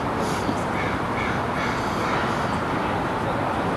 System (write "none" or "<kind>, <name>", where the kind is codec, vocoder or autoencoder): none